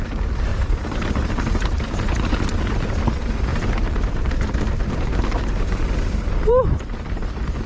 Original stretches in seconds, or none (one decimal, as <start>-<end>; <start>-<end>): 0.0-0.5; 3.0-3.5; 7.0-7.7